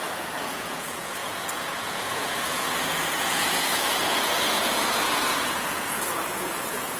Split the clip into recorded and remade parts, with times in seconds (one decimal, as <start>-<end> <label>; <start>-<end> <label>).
0.0-7.0 remade